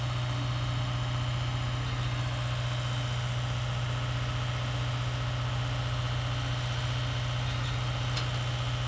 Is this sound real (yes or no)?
yes